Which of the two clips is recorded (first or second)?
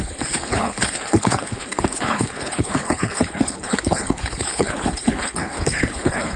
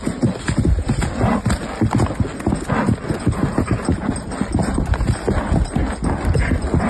second